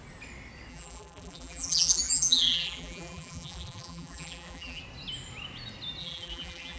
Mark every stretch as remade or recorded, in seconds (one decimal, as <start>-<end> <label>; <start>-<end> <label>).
0.0-0.7 recorded; 0.7-4.8 remade; 4.8-6.0 recorded; 6.0-6.8 remade